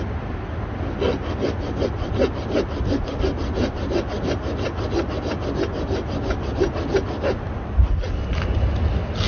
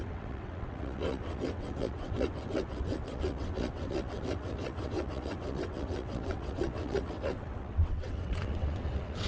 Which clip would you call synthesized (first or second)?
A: second